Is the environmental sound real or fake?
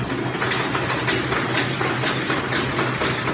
real